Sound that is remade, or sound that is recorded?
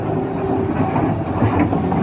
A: recorded